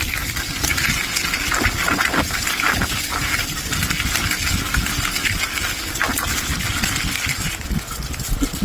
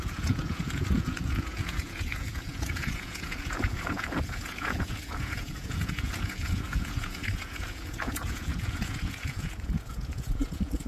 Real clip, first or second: first